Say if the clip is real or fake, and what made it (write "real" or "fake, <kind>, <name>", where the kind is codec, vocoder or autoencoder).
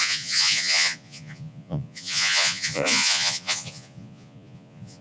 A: fake, vocoder, Vocos